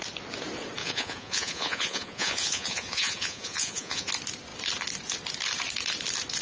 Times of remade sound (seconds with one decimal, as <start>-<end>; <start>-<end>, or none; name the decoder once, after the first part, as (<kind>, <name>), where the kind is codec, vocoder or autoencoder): 0.8-4.1 (vocoder, Vocos)